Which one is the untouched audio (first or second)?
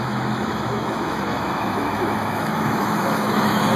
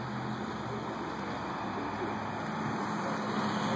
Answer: second